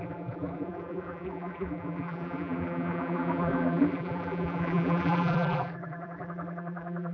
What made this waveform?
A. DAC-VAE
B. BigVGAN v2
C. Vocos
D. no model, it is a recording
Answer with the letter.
B